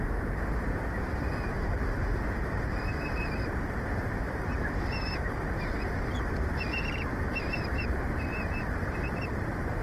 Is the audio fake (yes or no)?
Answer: yes